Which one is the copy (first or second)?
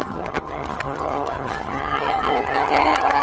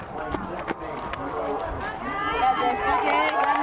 first